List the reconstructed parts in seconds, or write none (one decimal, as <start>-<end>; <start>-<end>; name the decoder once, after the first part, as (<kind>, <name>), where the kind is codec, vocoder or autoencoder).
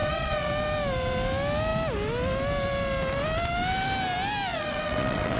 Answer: 0.0-0.5 (vocoder, WaveNeXt); 4.5-5.4